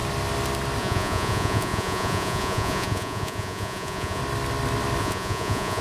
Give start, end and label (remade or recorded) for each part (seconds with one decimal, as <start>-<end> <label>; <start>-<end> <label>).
0.0-0.8 recorded; 0.8-4.2 remade; 4.2-5.0 recorded; 5.0-5.8 remade